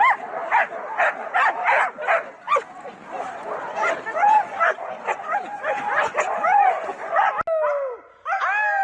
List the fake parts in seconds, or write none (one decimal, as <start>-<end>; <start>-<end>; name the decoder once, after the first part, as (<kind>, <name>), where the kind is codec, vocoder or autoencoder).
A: 4.1-7.3 (vocoder, Vocos)